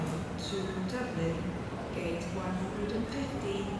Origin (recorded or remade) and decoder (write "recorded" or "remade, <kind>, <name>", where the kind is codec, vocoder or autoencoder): recorded